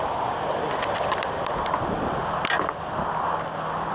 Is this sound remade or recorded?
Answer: recorded